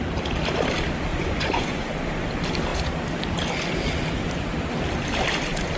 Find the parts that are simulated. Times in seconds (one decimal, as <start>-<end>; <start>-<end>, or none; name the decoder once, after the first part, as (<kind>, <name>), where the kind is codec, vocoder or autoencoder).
1.1-1.9 (vocoder, Vocos)